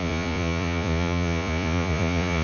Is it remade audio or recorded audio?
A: remade